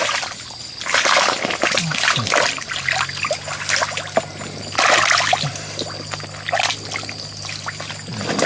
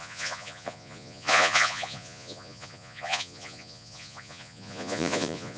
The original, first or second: first